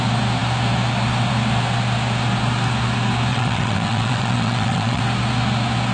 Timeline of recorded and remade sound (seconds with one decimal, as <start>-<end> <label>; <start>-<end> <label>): 0.0-3.3 recorded; 3.3-5.0 remade; 5.0-5.9 recorded